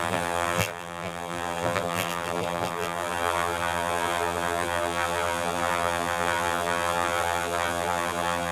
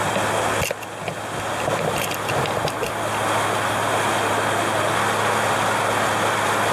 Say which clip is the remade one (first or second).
first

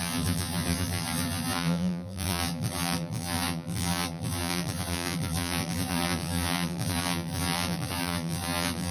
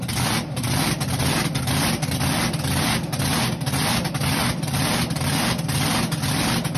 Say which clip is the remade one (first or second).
first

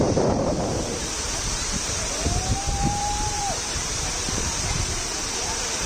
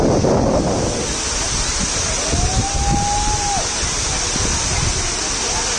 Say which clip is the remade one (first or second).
first